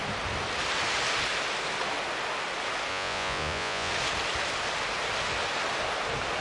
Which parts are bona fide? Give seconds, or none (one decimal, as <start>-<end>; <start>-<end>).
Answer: 0.0-2.9; 3.9-6.4